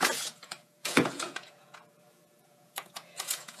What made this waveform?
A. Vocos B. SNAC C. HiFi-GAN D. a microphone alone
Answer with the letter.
A